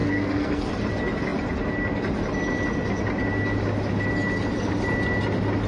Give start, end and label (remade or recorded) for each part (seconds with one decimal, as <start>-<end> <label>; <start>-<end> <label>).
0.0-0.7 remade; 0.7-5.7 recorded